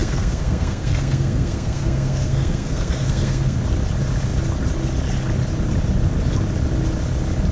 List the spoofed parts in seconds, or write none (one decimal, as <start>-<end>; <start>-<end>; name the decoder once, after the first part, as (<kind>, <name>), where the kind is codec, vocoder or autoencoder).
0.0-3.6 (codec, SNAC)